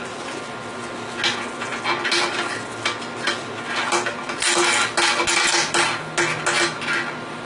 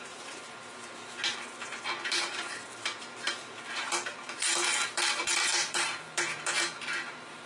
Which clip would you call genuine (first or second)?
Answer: first